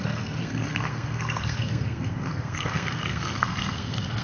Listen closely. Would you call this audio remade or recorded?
remade